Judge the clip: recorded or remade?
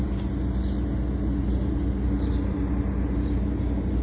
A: recorded